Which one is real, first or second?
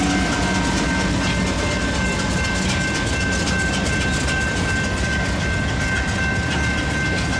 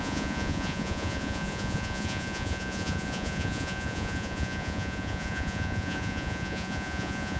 first